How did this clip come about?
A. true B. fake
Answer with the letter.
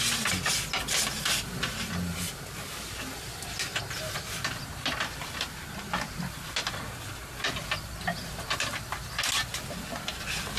A